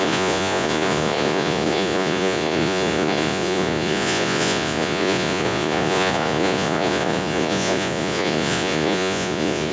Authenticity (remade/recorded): remade